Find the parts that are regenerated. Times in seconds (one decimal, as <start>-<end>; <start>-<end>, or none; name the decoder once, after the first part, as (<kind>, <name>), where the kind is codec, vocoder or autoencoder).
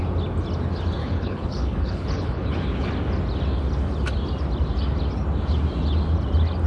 1.0-2.9 (codec, HILCodec)